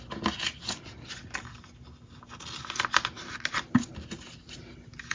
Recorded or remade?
recorded